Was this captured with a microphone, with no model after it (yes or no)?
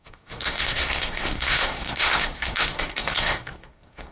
no